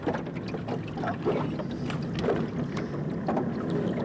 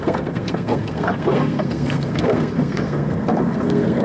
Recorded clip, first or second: first